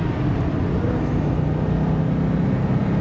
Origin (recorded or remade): recorded